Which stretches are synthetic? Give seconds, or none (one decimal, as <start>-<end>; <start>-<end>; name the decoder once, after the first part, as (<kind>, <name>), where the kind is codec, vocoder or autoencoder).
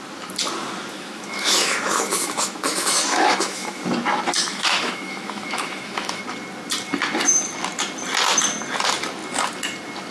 0.9-3.8 (autoencoder, DAC-VAE); 4.5-6.2